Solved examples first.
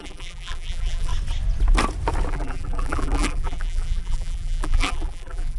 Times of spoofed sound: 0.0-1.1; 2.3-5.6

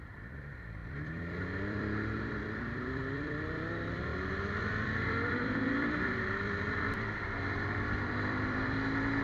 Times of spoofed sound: 0.0-4.1; 4.6-9.2